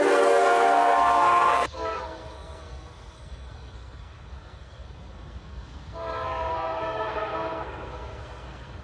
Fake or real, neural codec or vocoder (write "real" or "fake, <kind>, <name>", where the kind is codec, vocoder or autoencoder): fake, codec, SNAC